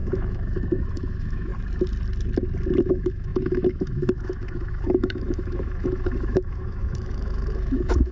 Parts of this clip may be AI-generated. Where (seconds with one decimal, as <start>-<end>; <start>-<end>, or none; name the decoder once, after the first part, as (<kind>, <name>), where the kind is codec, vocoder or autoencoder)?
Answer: 0.0-1.5 (autoencoder, DAC-VAE); 2.8-8.1